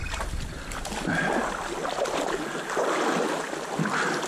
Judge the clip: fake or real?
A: real